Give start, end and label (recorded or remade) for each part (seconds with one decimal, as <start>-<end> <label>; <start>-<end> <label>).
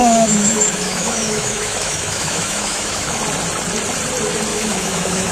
0.0-3.2 remade; 3.2-4.5 recorded; 4.5-5.3 remade